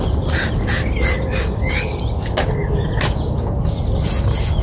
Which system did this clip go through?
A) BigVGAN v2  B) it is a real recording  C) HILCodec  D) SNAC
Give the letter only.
B